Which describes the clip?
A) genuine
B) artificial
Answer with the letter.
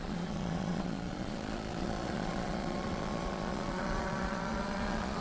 B